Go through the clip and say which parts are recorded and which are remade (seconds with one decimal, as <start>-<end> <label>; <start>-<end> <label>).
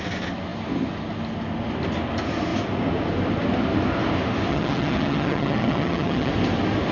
0.0-4.5 recorded; 4.5-6.3 remade; 6.3-6.9 recorded